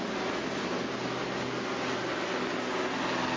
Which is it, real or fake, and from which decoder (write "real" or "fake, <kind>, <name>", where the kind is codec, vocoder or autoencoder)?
real